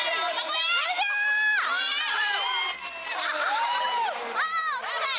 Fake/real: fake